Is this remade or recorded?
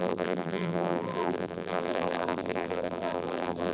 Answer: remade